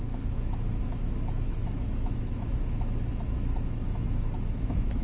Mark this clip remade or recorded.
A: remade